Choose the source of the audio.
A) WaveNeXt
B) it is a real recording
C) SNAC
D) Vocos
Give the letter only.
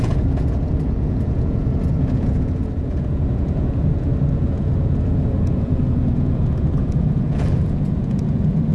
D